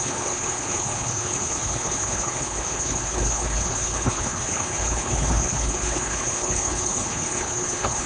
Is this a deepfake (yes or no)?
yes